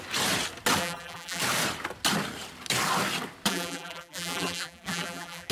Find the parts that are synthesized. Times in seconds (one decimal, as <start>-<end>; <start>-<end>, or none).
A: 0.8-1.4; 3.5-5.5